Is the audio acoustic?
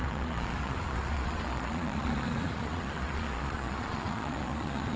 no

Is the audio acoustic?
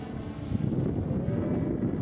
yes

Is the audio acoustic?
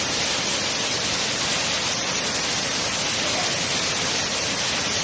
yes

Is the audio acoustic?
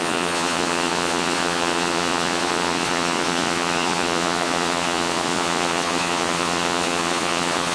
no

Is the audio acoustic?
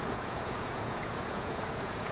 no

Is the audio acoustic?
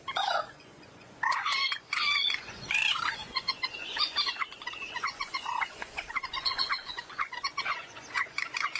no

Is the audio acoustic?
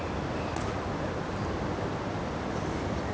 yes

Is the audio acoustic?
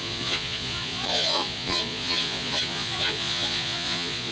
no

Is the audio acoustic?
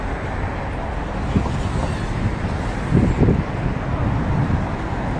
yes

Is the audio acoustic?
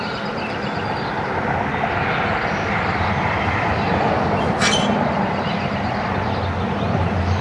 yes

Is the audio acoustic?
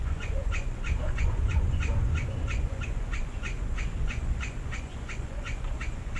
no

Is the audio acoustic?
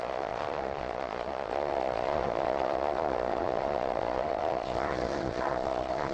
no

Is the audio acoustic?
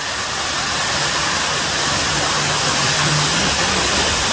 yes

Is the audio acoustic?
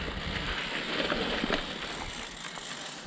yes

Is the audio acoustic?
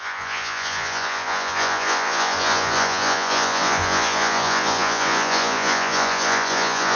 no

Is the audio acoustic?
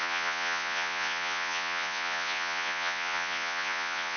no